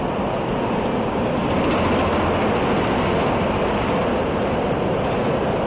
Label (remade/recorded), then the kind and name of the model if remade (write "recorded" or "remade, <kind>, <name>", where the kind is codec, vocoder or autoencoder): recorded